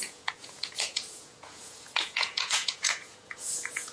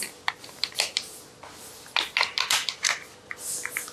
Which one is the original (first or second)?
second